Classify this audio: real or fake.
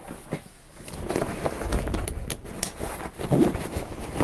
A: real